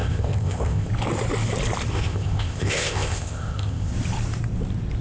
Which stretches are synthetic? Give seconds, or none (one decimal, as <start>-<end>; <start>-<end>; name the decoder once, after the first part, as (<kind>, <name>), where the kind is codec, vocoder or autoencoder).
0.0-0.9 (codec, ZipCodec); 1.9-3.9

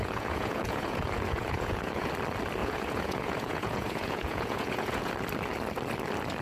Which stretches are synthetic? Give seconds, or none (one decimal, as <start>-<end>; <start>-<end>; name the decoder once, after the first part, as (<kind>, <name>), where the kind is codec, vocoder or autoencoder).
0.0-2.1 (vocoder, Vocos); 2.6-5.1

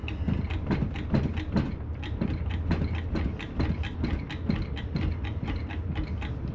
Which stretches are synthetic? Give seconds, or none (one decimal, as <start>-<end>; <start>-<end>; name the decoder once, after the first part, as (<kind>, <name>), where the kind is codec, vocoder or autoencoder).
0.0-2.5 (vocoder, BigVGAN v2); 4.8-6.5